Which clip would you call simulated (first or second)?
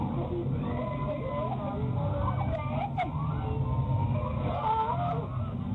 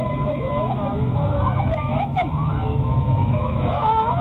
second